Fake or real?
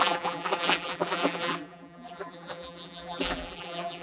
fake